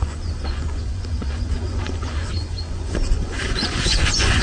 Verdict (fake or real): fake